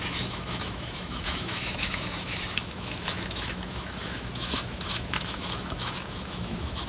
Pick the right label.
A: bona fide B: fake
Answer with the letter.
B